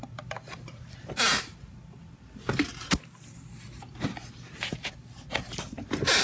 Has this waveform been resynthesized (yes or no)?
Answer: no